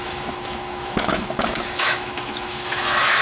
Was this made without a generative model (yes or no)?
no